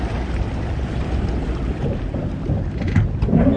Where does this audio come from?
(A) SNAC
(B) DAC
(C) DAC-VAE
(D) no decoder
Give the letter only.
D